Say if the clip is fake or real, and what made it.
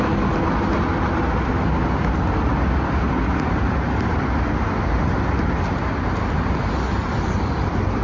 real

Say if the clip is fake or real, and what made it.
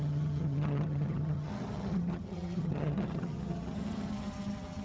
fake, vocoder, HiFi-GAN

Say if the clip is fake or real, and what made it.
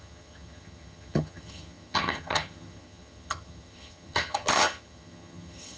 fake, vocoder, HiFi-GAN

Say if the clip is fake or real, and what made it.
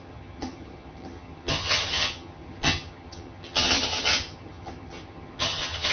fake, vocoder, HiFi-GAN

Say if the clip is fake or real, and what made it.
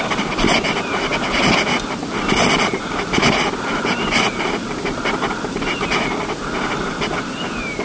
real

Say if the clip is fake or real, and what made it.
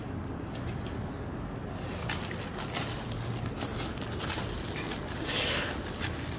real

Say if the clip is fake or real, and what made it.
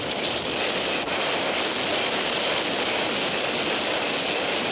real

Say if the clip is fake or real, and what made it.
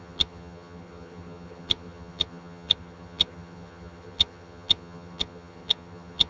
fake, vocoder, HiFi-GAN